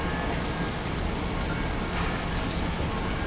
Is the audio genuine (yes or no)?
yes